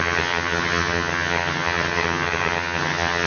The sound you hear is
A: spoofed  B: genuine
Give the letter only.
A